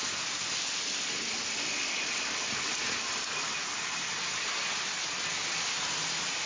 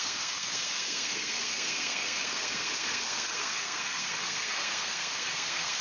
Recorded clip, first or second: first